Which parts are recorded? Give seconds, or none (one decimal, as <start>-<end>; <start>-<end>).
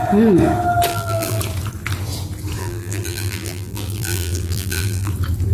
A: 0.0-0.9; 1.4-2.6; 5.1-5.5